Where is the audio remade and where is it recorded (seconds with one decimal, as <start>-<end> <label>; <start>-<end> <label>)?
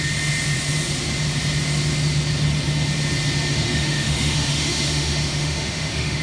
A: 0.0-3.5 recorded; 3.5-6.2 remade